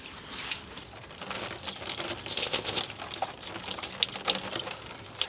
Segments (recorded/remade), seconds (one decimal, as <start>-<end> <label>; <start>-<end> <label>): 0.0-2.3 recorded; 2.3-2.8 remade; 2.8-5.3 recorded